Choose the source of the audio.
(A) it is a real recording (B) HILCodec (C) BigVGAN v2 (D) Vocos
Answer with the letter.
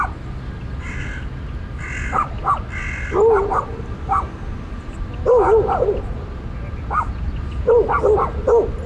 A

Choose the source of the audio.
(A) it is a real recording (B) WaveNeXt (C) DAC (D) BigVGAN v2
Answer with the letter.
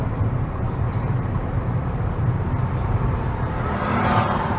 D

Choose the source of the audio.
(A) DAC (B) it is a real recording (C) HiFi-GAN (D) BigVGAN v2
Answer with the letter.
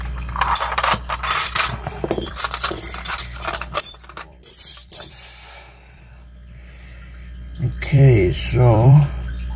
D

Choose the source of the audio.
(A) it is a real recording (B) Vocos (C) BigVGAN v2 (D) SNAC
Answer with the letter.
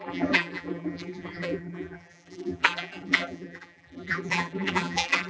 C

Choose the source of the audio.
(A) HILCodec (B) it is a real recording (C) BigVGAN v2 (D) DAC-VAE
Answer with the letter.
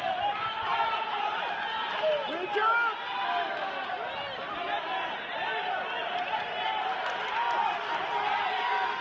B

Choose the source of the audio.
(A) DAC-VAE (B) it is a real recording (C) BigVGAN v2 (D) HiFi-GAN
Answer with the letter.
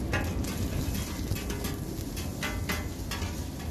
B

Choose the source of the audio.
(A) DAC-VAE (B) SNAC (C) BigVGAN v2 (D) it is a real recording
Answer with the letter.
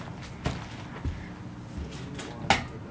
D